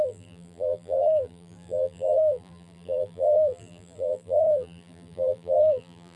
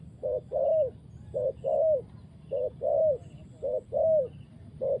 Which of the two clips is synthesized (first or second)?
first